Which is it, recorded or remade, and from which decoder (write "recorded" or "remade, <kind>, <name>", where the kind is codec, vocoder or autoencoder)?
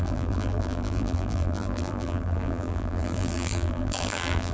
remade, vocoder, BigVGAN v2